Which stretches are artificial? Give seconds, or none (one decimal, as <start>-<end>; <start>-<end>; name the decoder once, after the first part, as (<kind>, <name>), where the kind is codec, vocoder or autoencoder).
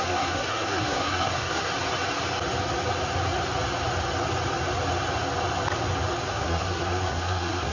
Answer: 0.0-1.7 (codec, SNAC); 6.3-7.7